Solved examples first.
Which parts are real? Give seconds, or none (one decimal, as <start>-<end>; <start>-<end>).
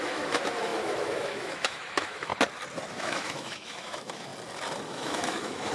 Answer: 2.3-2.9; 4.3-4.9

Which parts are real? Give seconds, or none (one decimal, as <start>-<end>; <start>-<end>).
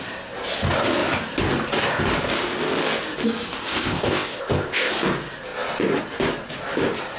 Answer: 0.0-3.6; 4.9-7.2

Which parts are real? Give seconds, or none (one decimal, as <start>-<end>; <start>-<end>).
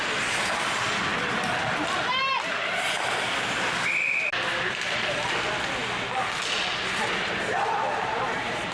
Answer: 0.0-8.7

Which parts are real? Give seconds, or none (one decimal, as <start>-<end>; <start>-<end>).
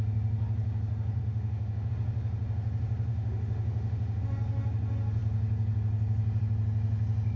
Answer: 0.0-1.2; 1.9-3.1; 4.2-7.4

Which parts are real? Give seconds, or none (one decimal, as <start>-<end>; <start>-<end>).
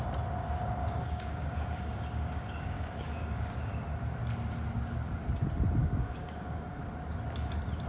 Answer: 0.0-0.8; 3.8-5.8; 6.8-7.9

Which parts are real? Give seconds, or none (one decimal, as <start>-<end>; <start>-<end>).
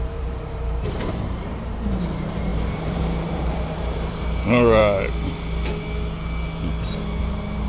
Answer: 4.8-7.2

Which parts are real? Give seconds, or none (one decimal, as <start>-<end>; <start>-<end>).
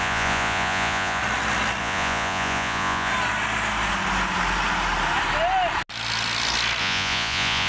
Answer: 1.2-1.8; 3.1-6.8